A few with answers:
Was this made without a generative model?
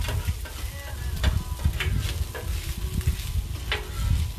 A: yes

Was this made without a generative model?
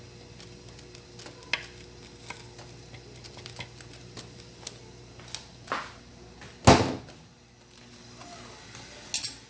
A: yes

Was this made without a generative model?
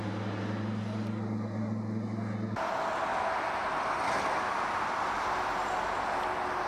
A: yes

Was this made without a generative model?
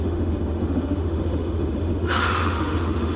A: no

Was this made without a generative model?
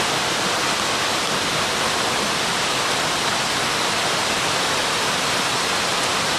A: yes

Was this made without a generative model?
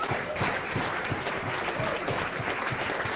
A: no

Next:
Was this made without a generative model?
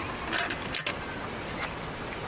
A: yes